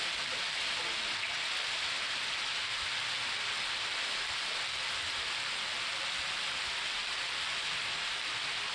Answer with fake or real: real